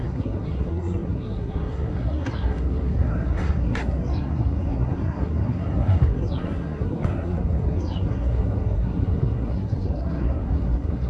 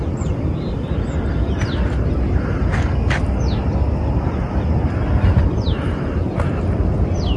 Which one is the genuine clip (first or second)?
second